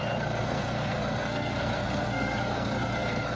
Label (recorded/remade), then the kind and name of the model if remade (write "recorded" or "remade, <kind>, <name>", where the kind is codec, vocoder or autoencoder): remade, codec, SNAC